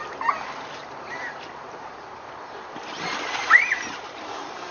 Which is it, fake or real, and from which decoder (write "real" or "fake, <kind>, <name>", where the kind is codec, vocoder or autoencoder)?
fake, vocoder, BigVGAN v2